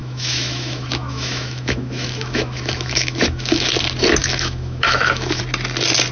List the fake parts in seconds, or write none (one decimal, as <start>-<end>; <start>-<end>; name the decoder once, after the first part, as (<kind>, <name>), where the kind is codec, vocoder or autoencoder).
0.0-3.7 (autoencoder, DAC-VAE); 4.2-5.4